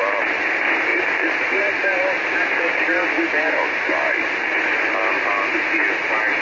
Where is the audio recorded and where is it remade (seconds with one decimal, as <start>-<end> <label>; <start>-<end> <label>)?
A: 0.0-6.4 recorded